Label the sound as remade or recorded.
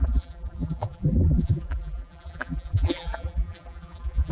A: remade